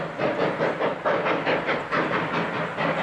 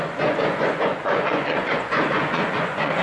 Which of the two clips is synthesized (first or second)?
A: second